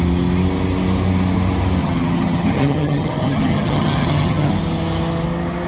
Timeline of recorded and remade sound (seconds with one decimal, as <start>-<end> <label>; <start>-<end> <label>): 0.0-1.8 recorded; 1.8-4.5 remade; 4.5-5.7 recorded

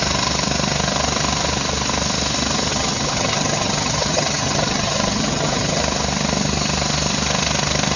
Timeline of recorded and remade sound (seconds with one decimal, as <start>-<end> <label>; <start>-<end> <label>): 0.0-2.7 recorded; 2.7-5.8 remade; 5.8-8.0 recorded

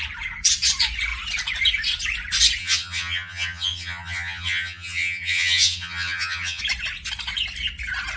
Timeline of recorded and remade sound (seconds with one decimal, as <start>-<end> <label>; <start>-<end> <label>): 0.0-2.6 recorded; 2.6-6.6 remade; 6.6-8.2 recorded

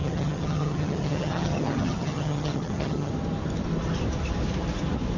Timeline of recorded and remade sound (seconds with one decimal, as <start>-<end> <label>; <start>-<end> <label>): 0.0-3.1 remade; 3.1-5.2 recorded